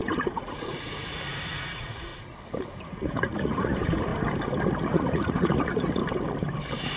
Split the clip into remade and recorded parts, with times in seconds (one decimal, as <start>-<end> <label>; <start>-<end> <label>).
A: 0.0-2.1 remade; 2.1-2.8 recorded; 2.8-4.1 remade; 4.1-4.9 recorded; 4.9-6.0 remade; 6.0-7.0 recorded